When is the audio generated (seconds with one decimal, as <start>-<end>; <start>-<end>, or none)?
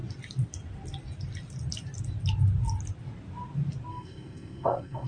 3.9-5.1